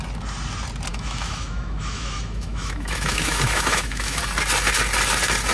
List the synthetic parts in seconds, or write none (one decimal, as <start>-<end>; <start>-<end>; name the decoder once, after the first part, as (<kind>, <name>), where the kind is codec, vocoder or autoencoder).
0.9-4.2 (autoencoder, DAC-VAE)